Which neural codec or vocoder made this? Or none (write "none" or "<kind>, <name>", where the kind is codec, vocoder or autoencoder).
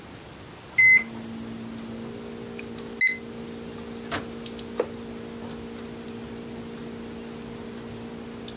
none